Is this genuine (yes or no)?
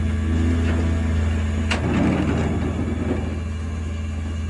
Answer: yes